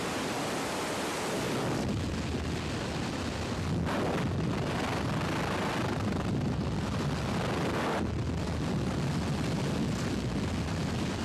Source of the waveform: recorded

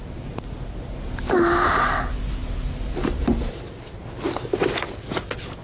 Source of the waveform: recorded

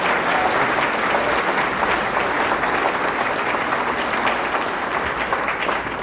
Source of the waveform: recorded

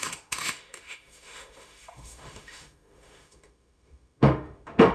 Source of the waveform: remade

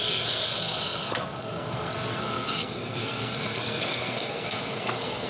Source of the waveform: remade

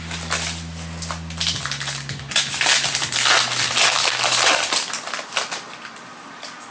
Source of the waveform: recorded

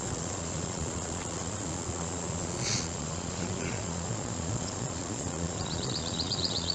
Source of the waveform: remade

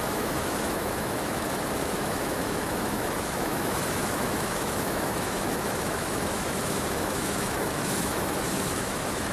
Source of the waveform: remade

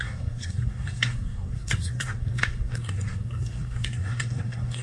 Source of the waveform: remade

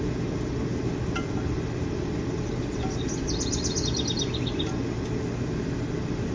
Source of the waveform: recorded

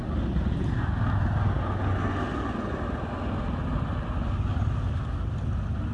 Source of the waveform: recorded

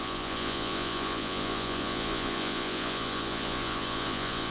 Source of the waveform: remade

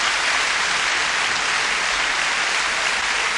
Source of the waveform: recorded